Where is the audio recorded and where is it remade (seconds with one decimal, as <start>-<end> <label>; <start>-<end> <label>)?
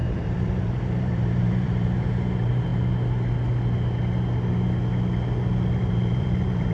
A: 0.0-2.7 remade; 2.7-5.8 recorded; 5.8-6.7 remade